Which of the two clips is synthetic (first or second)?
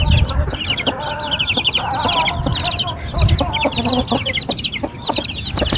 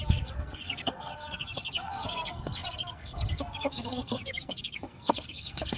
second